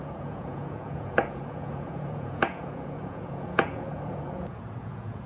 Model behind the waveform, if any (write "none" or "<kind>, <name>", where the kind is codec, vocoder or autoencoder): vocoder, Vocos